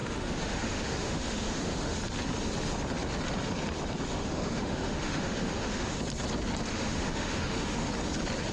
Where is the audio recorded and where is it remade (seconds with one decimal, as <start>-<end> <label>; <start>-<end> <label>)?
0.0-2.0 remade; 2.0-4.1 recorded; 4.1-6.0 remade; 6.0-6.7 recorded; 6.7-7.9 remade; 7.9-8.5 recorded